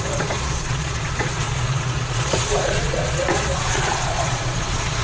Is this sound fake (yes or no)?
yes